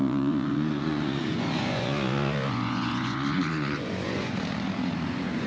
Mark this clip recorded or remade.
remade